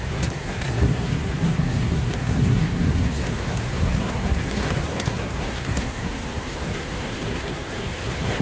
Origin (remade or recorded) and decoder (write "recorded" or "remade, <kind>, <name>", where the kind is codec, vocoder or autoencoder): remade, codec, SNAC